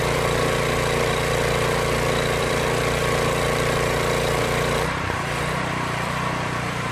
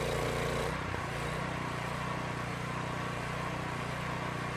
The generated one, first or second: first